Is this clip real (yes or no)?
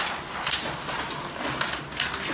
yes